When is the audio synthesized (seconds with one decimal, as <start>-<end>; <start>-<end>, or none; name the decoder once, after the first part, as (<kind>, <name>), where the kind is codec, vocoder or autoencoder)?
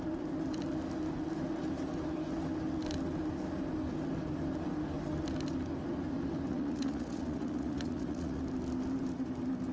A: 6.5-8.4 (vocoder, Vocos)